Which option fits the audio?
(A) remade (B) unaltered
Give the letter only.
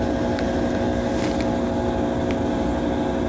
B